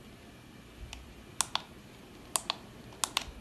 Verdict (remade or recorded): recorded